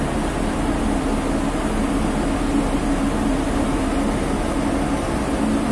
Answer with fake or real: real